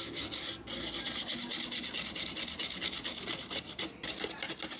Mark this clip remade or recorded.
recorded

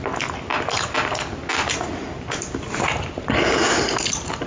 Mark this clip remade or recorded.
recorded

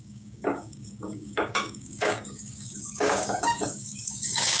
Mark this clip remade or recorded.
remade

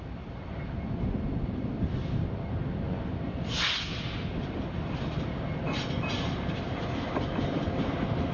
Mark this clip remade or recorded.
recorded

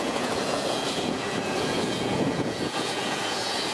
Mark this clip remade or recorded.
remade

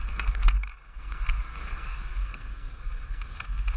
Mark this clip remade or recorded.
remade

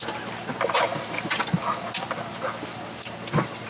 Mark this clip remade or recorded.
recorded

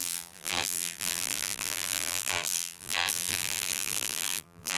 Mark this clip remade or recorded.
remade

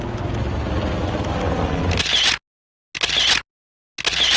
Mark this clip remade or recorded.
recorded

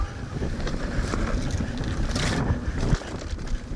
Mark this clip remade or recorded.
recorded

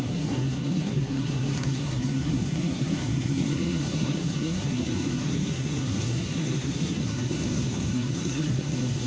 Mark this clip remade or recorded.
remade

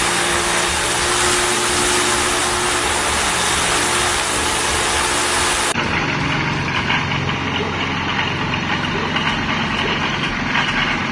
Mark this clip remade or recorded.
recorded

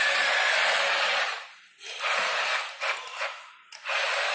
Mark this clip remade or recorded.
recorded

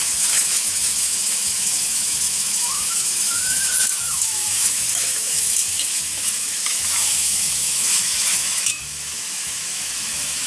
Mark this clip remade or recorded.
remade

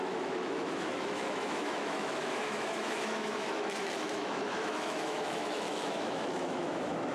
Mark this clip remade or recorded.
remade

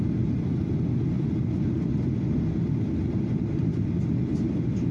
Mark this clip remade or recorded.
recorded